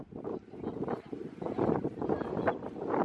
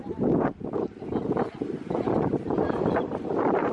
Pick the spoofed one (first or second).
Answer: second